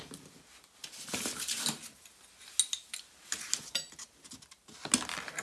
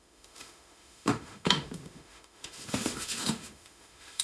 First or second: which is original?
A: first